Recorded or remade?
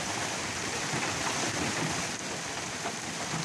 remade